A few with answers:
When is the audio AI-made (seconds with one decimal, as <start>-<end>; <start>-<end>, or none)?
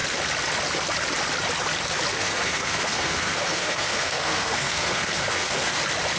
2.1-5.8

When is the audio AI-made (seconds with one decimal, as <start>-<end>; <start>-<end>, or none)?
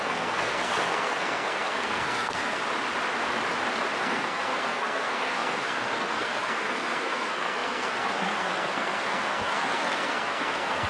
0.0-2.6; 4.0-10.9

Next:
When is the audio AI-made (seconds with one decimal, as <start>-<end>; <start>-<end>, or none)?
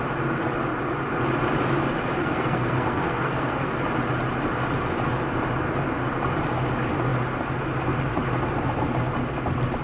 2.2-3.7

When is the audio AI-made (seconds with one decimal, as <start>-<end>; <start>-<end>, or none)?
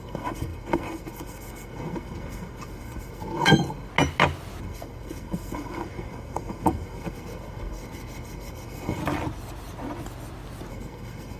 0.0-3.9; 4.6-9.0; 10.7-11.4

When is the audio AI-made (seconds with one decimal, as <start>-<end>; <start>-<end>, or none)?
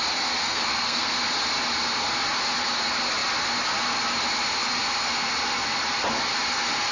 0.4-1.1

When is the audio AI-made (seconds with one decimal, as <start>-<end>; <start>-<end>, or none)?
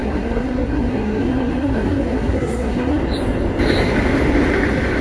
0.0-3.0